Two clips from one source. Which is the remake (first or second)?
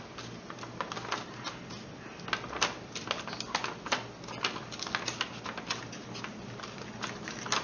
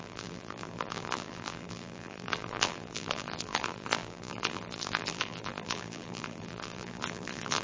second